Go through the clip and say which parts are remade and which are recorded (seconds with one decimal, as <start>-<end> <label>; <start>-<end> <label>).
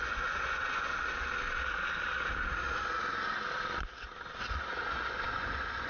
0.0-0.9 remade; 0.9-4.4 recorded; 4.4-5.9 remade